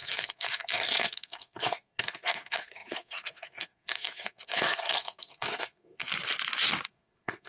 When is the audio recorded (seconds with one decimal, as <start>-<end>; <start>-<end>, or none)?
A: 6.1-6.9